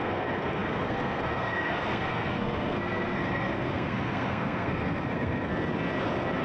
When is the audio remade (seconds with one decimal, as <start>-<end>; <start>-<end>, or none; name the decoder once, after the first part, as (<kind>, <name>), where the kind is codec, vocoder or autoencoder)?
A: 0.0-5.5 (codec, SNAC)